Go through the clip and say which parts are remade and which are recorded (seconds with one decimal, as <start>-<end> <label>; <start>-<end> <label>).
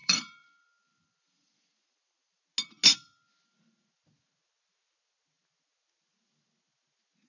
0.0-2.4 remade; 2.4-7.3 recorded